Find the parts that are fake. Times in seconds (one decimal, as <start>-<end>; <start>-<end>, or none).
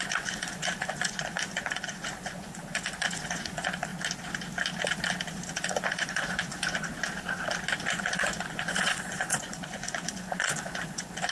0.0-3.9; 5.3-6.9; 7.8-11.3